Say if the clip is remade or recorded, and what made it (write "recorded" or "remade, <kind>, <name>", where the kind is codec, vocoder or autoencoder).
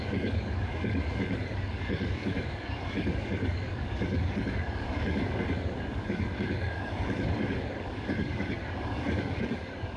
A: remade, codec, DAC